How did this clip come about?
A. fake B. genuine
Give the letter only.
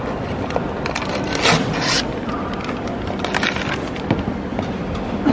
B